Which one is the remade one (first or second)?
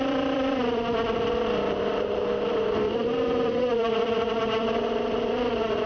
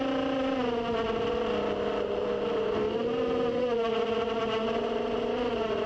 first